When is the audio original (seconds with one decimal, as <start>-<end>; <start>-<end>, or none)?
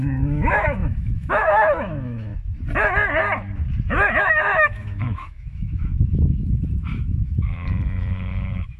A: 2.3-4.2